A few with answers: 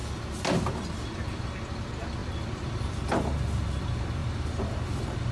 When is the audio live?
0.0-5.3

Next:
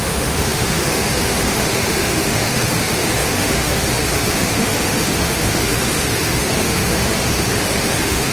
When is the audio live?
none

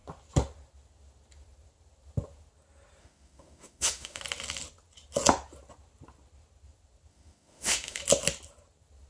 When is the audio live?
0.0-3.0; 4.2-7.1; 8.0-9.1

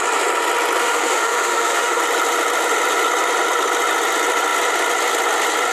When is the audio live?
0.0-0.8; 2.0-5.7